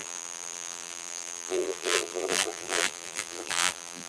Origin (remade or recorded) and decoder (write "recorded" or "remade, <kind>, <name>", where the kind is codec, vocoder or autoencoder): remade, vocoder, BigVGAN v2